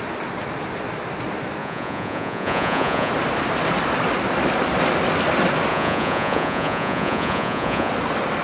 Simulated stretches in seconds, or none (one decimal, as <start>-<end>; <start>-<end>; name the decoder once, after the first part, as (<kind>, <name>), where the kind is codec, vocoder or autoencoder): 1.6-3.1 (vocoder, Vocos); 5.7-7.9

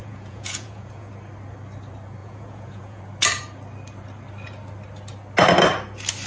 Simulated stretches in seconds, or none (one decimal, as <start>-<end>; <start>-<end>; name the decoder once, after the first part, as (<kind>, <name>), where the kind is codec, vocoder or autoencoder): 0.0-1.1 (vocoder, Vocos); 2.2-3.0

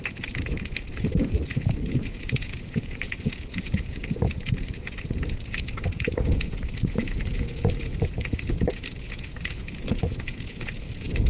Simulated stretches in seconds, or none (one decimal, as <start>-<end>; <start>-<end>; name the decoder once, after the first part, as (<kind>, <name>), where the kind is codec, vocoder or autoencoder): 0.0-11.3 (vocoder, Vocos)

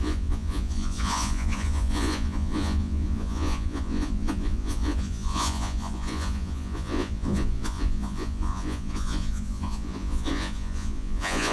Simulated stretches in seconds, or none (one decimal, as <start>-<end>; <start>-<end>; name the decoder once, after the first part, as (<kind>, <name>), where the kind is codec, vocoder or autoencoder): 0.0-11.5 (vocoder, Vocos)

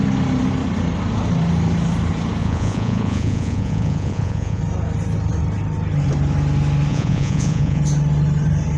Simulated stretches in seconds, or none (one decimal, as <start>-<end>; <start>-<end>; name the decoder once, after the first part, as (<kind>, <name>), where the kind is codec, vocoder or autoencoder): 2.4-4.6 (vocoder, Vocos); 6.9-7.8

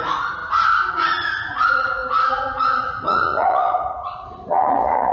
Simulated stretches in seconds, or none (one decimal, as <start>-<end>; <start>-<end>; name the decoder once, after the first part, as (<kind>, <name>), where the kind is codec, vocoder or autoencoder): 0.0-0.4 (vocoder, Vocos); 0.9-5.1